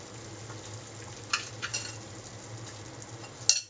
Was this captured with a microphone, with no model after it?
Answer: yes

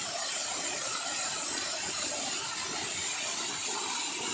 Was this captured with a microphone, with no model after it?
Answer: yes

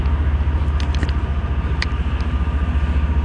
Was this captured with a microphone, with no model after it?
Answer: yes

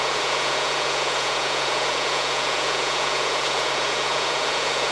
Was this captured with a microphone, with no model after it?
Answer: no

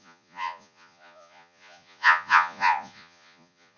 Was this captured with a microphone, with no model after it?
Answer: no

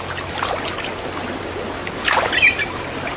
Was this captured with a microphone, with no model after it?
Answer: yes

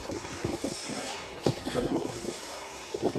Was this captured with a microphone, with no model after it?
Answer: no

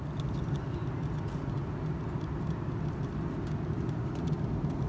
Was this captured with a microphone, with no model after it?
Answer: yes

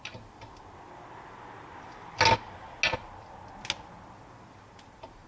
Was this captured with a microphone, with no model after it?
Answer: yes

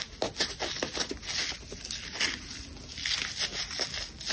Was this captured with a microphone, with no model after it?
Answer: yes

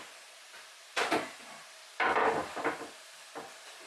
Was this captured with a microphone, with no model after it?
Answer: yes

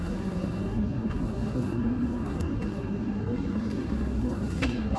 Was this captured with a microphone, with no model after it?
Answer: no